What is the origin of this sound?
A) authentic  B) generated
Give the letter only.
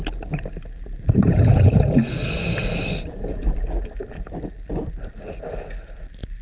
A